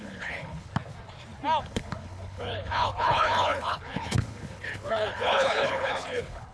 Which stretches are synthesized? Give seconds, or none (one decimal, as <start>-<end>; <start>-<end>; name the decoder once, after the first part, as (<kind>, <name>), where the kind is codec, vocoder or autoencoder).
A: 0.0-0.7 (codec, HILCodec); 1.6-6.5